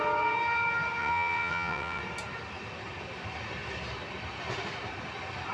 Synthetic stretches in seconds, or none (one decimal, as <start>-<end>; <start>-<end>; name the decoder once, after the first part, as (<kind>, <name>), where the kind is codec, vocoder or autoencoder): 1.0-2.0 (vocoder, WaveNeXt)